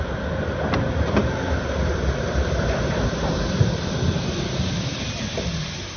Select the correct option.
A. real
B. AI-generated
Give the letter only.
A